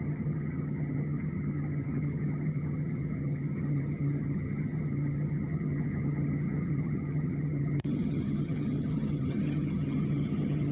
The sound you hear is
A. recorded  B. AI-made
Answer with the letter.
B